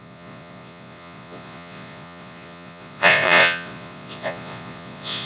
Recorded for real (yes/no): no